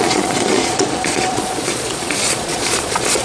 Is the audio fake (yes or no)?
yes